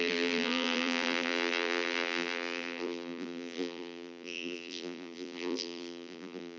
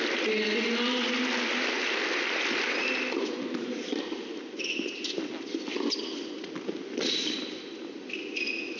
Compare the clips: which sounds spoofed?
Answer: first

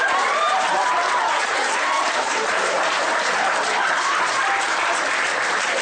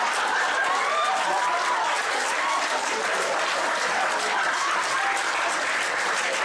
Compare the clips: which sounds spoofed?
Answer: first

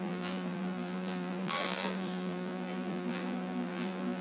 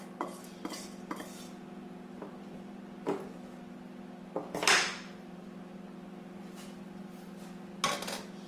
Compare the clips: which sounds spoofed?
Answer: first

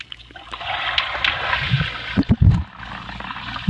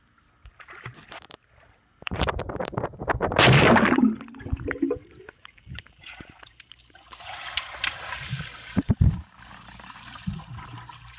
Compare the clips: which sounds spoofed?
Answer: second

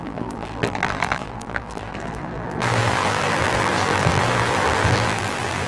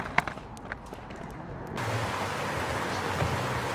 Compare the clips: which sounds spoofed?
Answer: first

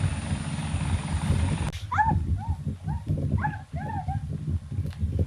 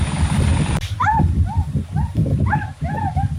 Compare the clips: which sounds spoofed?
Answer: second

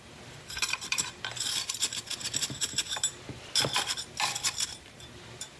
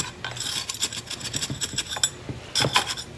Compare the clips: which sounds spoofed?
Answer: first